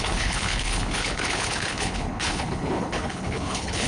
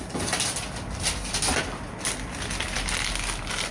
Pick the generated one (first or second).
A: first